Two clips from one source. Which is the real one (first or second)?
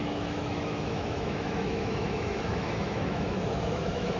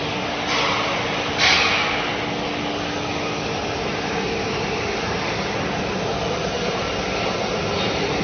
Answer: second